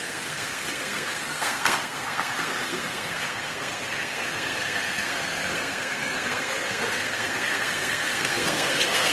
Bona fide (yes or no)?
no